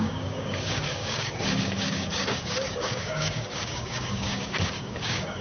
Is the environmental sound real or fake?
fake